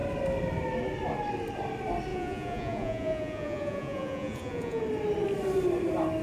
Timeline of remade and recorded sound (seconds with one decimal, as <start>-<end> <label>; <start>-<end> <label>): 0.0-2.1 recorded; 2.1-4.8 remade; 4.8-6.2 recorded